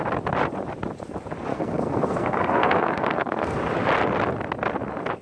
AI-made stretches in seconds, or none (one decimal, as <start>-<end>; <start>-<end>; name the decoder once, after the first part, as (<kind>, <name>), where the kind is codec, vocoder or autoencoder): 1.5-3.6 (codec, SNAC)